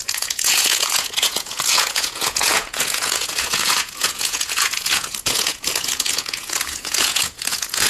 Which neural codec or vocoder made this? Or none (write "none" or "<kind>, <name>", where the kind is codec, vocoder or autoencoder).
vocoder, Vocos